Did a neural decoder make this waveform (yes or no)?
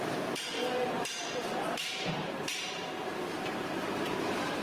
yes